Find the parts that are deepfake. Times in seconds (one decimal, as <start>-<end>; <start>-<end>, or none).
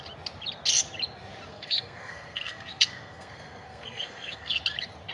1.5-4.6